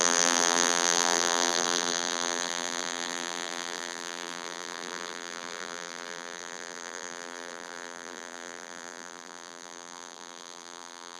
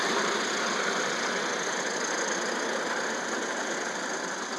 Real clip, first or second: second